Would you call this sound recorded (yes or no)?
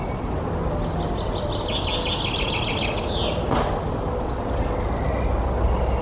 yes